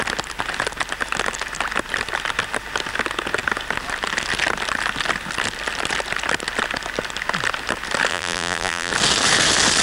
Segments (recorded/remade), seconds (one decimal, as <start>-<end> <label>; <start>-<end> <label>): 0.0-8.1 recorded; 8.1-8.9 remade; 8.9-9.8 recorded